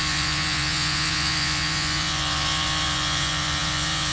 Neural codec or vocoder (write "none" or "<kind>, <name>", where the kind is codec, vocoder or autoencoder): vocoder, Vocos